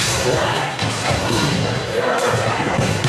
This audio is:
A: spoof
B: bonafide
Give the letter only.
A